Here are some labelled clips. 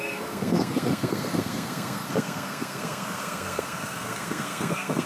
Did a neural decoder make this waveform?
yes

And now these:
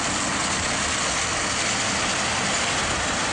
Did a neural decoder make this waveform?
no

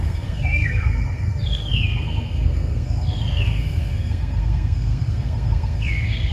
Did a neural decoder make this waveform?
yes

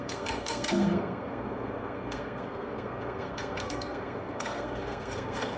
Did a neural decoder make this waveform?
yes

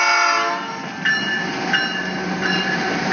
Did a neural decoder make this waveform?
no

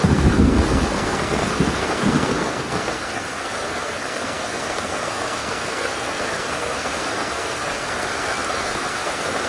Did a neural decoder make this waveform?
yes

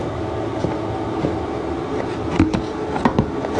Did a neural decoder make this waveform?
no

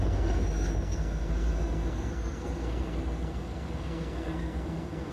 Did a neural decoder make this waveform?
yes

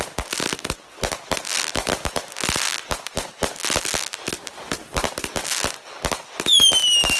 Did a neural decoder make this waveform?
no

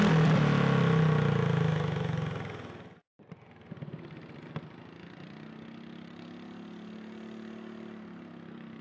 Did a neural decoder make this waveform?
no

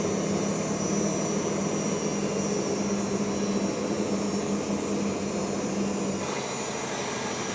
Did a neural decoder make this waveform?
no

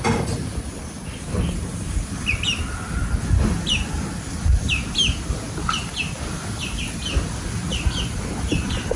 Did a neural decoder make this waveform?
no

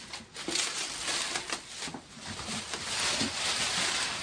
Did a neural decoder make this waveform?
no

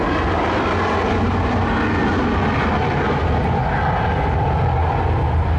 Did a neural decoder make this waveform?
no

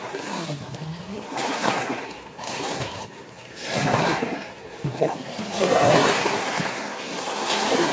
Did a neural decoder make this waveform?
yes